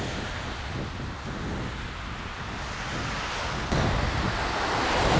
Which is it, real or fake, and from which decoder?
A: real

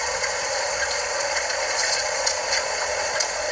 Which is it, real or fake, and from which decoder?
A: fake, vocoder, Vocos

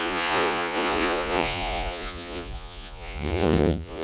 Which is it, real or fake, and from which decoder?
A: fake, vocoder, Vocos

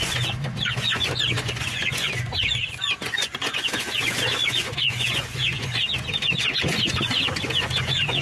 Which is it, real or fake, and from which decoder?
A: fake, vocoder, Vocos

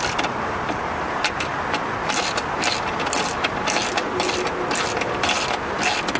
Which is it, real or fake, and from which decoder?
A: real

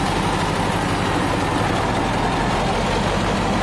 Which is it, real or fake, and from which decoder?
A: real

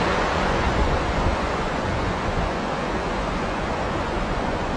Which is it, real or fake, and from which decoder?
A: fake, vocoder, Vocos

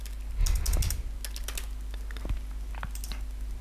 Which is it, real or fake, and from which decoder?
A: real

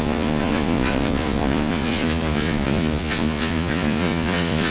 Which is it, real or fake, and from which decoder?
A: fake, vocoder, Vocos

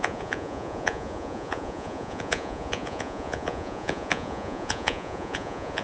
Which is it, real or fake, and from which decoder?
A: fake, vocoder, Vocos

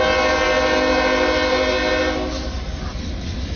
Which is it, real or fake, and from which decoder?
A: real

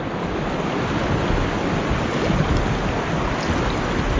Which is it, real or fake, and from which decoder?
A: real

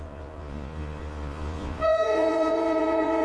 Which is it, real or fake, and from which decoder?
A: fake, vocoder, Vocos